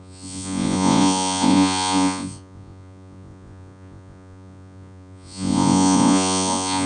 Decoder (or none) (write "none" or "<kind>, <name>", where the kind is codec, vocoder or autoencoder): vocoder, Vocos